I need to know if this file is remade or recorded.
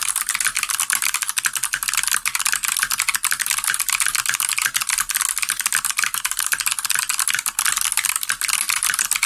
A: recorded